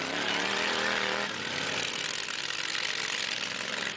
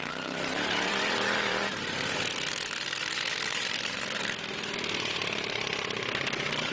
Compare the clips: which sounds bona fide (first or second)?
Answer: first